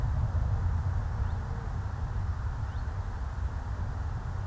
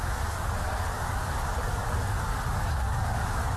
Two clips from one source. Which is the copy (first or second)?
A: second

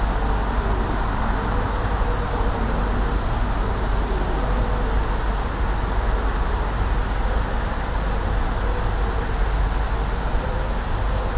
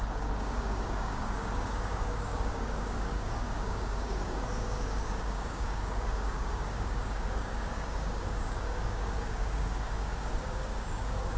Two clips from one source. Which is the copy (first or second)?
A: second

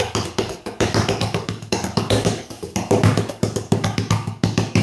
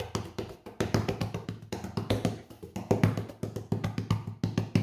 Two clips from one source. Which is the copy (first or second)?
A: first